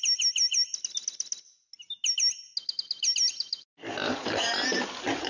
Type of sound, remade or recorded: recorded